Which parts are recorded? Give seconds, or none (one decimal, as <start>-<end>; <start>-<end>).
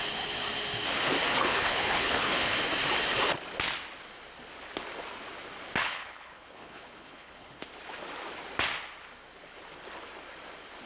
0.0-1.3; 2.6-5.8; 7.6-10.9